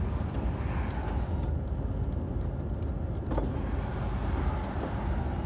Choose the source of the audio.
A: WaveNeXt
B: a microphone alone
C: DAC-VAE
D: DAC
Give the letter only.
B